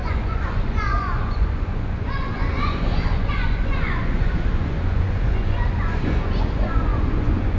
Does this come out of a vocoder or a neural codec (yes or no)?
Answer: yes